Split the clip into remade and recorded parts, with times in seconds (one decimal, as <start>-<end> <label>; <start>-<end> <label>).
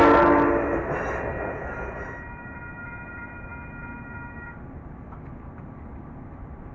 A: 0.0-6.7 recorded